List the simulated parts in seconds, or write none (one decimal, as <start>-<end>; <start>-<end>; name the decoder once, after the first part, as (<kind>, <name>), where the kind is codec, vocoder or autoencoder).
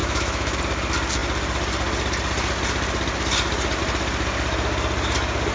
0.0-0.6 (autoencoder, DAC-VAE)